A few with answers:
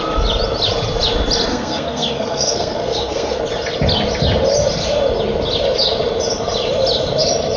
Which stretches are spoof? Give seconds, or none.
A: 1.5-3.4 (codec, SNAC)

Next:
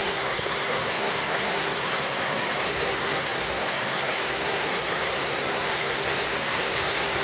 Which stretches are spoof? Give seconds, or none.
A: 0.0-7.2 (codec, SNAC)